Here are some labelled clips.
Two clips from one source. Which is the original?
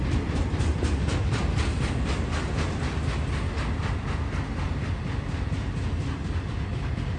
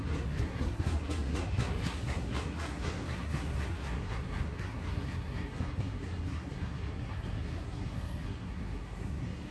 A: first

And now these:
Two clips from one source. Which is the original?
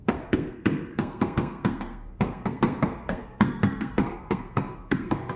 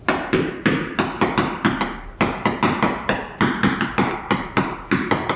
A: second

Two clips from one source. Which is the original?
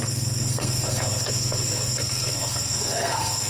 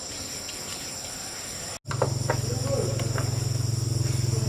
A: second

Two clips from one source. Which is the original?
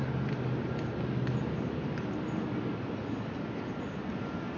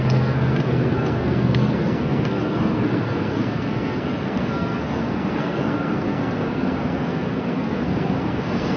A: first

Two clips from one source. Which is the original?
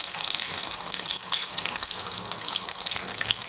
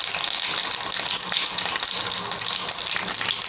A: second